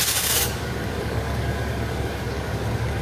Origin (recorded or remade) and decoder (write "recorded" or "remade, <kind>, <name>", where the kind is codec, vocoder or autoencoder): remade, codec, DAC